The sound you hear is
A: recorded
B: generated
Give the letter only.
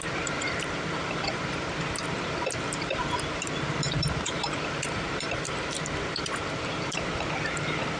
B